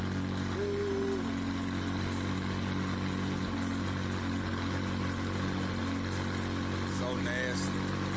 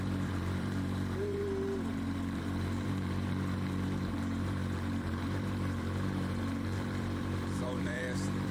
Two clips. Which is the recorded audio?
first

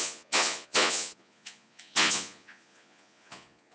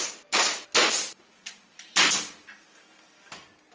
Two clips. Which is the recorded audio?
second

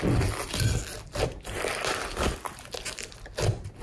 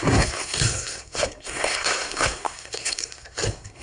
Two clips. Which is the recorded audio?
first